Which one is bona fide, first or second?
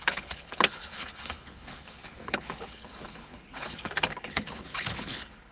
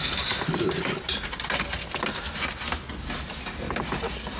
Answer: second